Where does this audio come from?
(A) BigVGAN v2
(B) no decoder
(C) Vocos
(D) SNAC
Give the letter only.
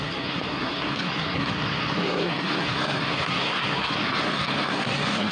D